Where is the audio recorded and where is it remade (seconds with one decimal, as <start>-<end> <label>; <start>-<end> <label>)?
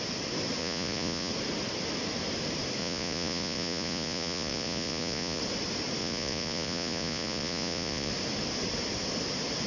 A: 0.0-0.6 recorded; 0.6-1.3 remade; 1.3-2.8 recorded; 2.8-5.4 remade; 5.4-6.0 recorded; 6.0-8.1 remade; 8.1-9.7 recorded